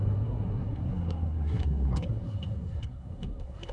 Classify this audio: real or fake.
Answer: fake